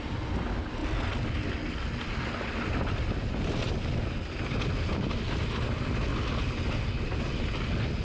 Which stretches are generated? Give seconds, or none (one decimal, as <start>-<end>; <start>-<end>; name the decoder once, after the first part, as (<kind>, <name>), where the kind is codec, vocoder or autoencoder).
none